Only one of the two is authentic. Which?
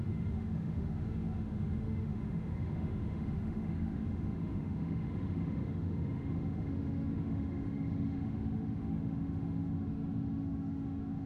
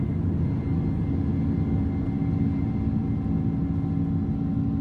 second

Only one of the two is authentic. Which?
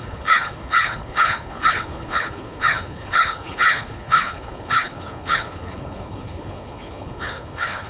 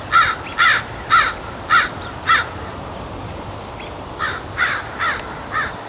second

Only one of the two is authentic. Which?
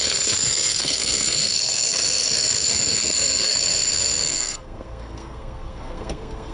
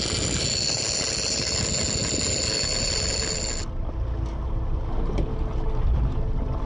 second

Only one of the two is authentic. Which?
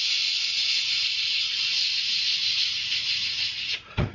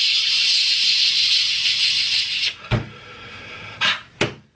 second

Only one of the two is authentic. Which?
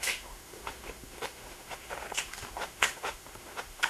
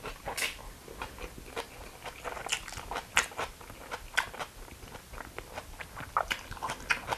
second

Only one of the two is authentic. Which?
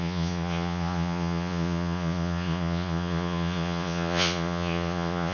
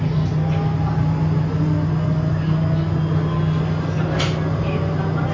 second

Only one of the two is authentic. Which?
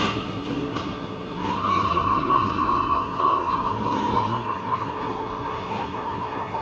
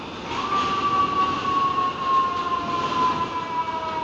second